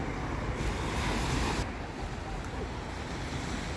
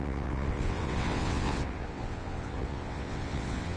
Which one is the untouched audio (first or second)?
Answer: first